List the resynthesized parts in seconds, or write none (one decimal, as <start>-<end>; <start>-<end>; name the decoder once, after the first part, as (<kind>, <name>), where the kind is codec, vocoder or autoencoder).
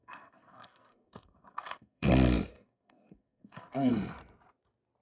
0.0-2.1 (codec, SNAC); 2.5-3.9